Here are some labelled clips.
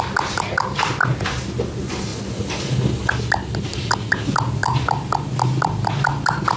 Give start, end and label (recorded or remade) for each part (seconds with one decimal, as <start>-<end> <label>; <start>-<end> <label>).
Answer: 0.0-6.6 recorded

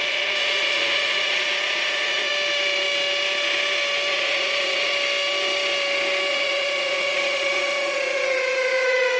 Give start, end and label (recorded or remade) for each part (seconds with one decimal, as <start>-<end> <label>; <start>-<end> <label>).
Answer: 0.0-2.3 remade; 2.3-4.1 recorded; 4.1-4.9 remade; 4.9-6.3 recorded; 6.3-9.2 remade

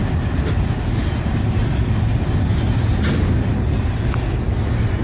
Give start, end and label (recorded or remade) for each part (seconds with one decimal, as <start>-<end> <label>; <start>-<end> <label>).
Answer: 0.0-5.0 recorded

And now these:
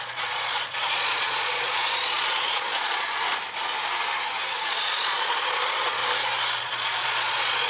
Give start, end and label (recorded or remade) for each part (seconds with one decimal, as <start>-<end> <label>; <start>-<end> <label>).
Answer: 0.0-3.2 remade; 3.2-4.6 recorded; 4.6-6.0 remade; 6.0-6.6 recorded; 6.6-7.7 remade

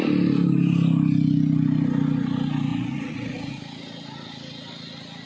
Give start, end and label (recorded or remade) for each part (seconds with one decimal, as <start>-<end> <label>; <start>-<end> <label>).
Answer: 0.0-2.7 recorded; 2.7-3.6 remade; 3.6-5.3 recorded

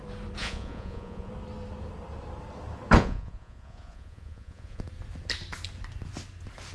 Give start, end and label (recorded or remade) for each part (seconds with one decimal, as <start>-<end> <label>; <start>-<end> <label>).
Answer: 0.0-0.4 recorded; 0.4-1.3 remade; 1.3-3.0 recorded; 3.0-4.8 remade; 4.8-6.7 recorded

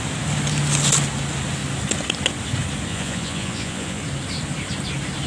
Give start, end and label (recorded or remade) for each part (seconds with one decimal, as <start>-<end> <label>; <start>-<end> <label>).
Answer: 0.0-2.9 recorded; 2.9-4.0 remade; 4.0-5.3 recorded

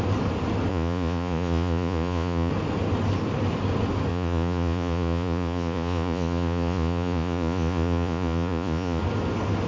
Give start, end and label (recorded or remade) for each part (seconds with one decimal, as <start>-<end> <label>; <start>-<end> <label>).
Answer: 0.0-0.7 recorded; 0.7-2.5 remade; 2.5-4.1 recorded; 4.1-9.0 remade; 9.0-9.7 recorded